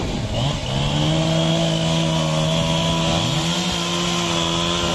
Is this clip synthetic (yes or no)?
no